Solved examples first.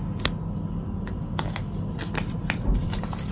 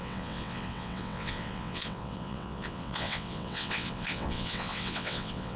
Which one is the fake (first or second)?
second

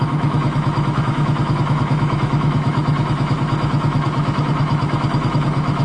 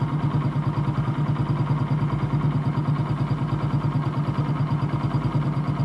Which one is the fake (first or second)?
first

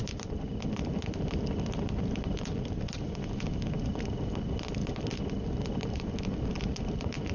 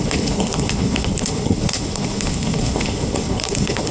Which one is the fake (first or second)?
second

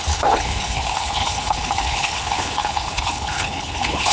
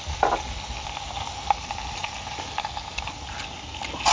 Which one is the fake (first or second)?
first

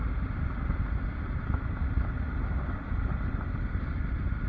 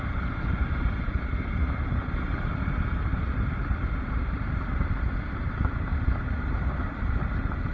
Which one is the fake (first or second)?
second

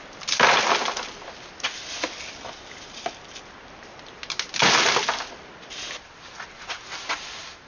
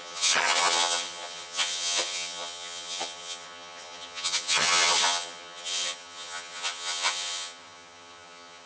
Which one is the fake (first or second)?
second